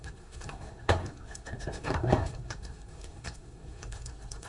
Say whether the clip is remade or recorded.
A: remade